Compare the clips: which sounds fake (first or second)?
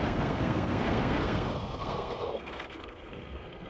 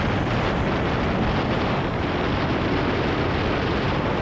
first